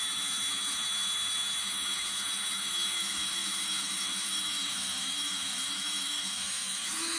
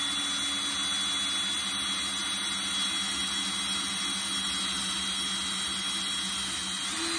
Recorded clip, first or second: second